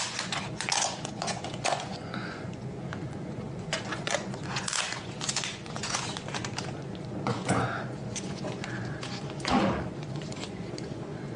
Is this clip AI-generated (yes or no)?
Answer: yes